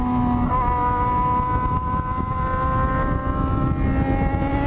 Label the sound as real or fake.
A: real